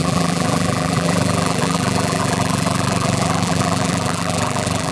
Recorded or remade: remade